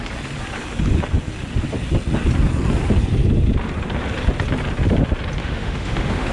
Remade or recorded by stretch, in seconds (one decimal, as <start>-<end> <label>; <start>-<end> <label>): 0.0-5.4 recorded; 5.4-6.3 remade